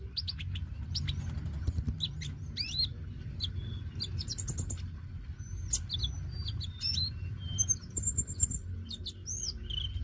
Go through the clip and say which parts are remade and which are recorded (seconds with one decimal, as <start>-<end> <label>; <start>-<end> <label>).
0.0-10.0 recorded